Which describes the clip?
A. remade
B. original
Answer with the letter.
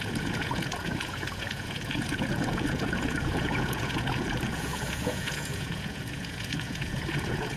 A